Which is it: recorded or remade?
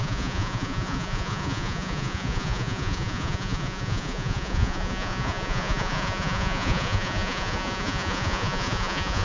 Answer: remade